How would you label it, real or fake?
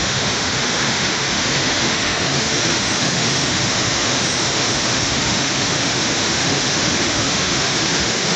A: fake